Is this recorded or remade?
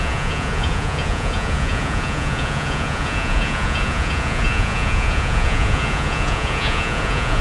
remade